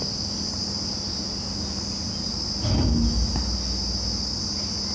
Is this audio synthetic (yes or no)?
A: no